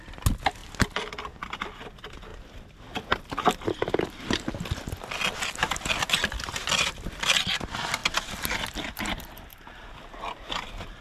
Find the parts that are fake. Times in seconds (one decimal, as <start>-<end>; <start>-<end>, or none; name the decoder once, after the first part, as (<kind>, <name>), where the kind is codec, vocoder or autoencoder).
none